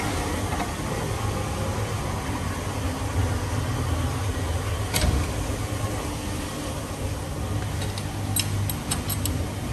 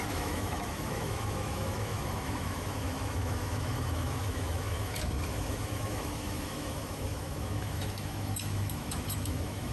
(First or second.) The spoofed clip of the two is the second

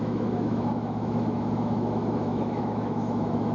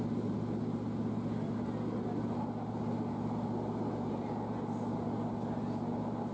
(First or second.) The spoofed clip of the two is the first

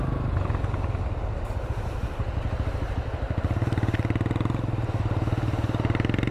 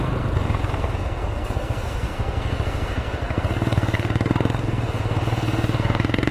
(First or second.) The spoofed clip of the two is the second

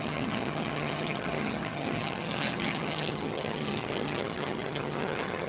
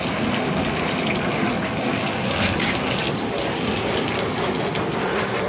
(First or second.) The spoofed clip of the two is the first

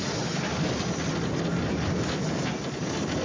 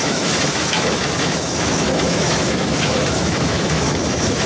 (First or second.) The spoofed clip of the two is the second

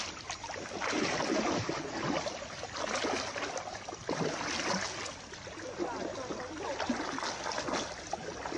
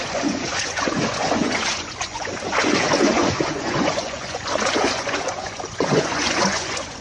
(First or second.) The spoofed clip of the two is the second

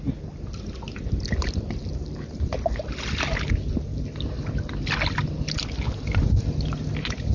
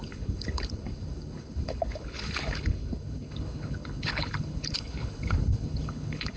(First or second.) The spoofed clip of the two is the second